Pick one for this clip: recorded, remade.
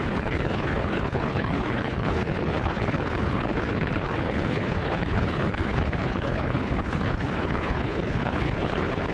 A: remade